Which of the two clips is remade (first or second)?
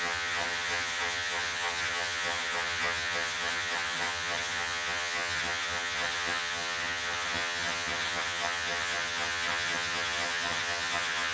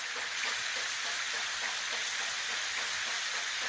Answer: first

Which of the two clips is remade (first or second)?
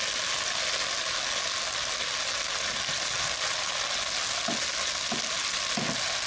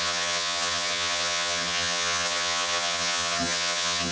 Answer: second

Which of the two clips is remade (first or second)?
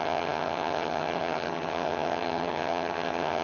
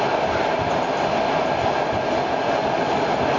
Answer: first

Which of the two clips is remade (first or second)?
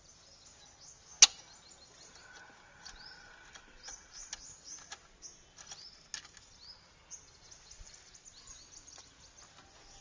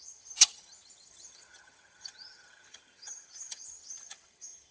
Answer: second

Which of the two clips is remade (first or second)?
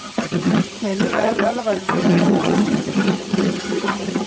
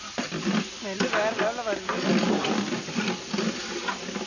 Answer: first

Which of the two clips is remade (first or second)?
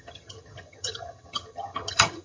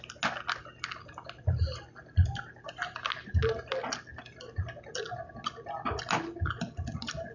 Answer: first